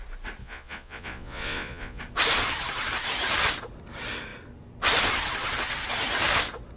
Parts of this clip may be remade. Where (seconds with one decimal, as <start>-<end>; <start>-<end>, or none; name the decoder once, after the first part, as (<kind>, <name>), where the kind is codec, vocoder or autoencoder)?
0.4-2.0 (vocoder, Vocos)